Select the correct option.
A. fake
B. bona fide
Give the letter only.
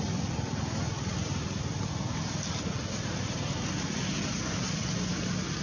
B